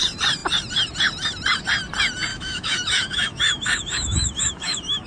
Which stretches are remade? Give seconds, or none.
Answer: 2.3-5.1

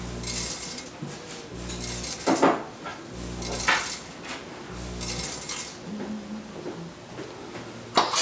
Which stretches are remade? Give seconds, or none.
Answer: none